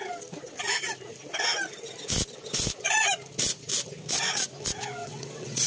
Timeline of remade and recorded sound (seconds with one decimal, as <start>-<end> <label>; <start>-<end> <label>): 0.0-5.0 recorded; 5.0-5.7 remade